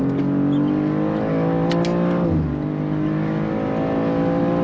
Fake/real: real